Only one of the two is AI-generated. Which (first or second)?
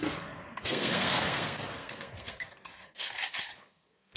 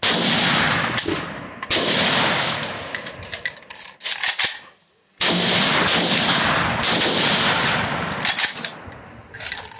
first